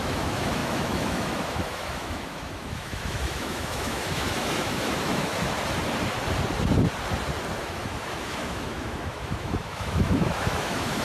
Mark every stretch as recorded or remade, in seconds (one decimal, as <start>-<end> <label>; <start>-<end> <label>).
0.0-5.3 remade; 5.3-7.6 recorded; 7.6-11.0 remade